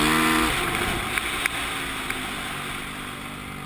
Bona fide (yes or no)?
yes